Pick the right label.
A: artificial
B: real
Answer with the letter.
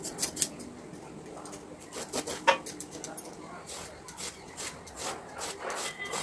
B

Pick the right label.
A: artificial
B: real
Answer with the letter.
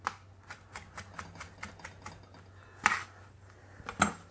B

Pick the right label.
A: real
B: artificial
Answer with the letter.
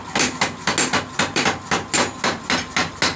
A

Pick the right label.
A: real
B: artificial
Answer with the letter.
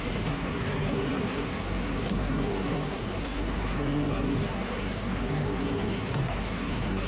B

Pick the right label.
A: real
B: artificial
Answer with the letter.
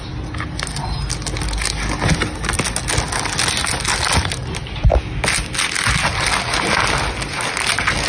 A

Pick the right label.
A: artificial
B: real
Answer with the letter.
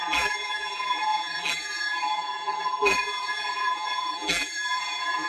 A